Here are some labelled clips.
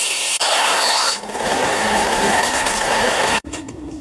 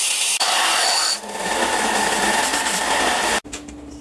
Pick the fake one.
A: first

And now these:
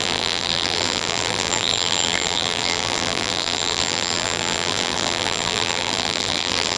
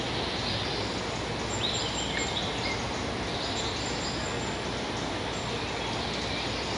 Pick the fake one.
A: first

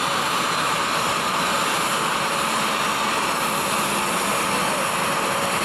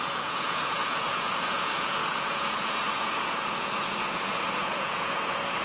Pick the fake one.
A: second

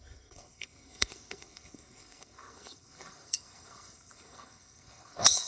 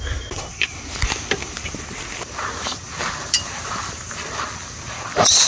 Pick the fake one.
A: first